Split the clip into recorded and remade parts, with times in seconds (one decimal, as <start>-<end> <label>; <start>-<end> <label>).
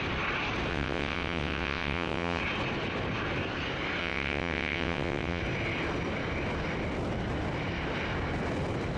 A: 0.0-0.7 recorded; 0.7-2.4 remade; 2.4-4.0 recorded; 4.0-5.4 remade; 5.4-9.0 recorded